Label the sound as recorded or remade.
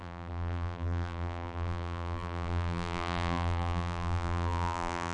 remade